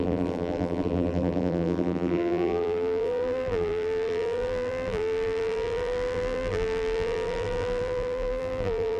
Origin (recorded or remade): remade